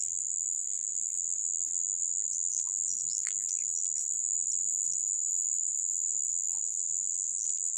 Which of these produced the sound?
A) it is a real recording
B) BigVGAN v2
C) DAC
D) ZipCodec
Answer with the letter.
B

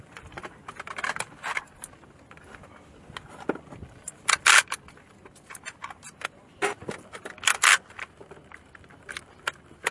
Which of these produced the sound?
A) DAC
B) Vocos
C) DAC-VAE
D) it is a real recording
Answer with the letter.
D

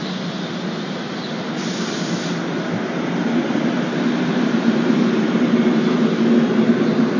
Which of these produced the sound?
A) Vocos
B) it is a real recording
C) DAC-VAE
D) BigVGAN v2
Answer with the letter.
B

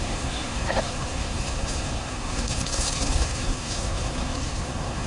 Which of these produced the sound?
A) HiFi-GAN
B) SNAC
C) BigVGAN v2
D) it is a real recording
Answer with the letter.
B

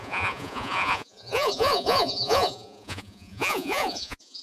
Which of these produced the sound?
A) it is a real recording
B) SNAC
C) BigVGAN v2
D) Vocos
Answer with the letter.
D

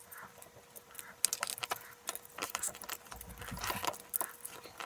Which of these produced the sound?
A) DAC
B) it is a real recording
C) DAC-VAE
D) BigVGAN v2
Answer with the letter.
B